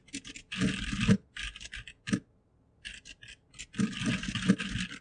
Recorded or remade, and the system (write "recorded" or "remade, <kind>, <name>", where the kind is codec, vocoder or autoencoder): recorded